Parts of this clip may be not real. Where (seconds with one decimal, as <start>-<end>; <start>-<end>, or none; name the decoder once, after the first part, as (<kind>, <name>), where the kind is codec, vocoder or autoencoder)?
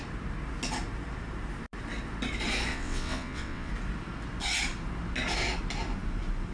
2.7-3.7 (vocoder, WaveNeXt)